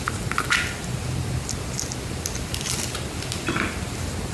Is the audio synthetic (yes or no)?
no